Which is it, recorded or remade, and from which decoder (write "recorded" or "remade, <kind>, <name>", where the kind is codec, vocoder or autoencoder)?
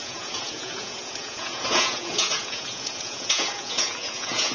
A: remade, vocoder, Vocos